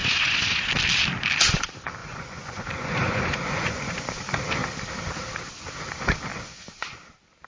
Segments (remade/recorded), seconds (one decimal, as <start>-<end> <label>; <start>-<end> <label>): 0.0-0.7 remade; 0.7-2.0 recorded; 2.0-3.9 remade; 3.9-6.3 recorded; 6.3-7.0 remade; 7.0-7.5 recorded